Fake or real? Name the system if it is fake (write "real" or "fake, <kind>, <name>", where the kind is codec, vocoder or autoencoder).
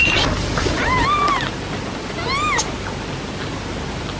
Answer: real